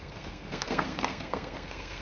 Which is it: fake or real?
fake